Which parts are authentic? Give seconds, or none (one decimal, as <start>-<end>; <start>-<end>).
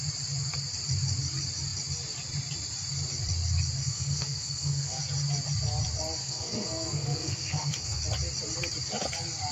0.0-3.8; 5.0-6.2; 8.0-9.5